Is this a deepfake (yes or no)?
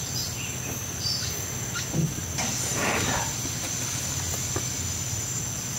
no